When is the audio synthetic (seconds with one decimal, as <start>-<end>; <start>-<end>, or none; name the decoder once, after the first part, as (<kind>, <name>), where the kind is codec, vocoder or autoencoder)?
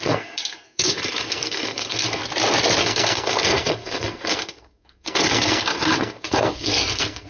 0.0-2.2 (codec, SNAC); 2.8-7.3